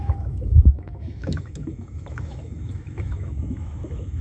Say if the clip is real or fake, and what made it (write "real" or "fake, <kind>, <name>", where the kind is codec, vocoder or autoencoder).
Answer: fake, autoencoder, DAC-VAE